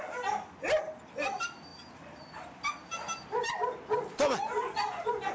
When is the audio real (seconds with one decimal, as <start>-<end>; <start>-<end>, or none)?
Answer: 0.0-5.3